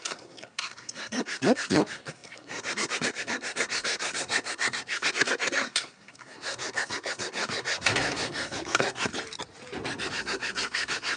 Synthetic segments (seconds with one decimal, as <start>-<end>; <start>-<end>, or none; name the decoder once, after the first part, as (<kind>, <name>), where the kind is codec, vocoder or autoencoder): 0.0-9.1 (codec, SNAC); 10.1-11.2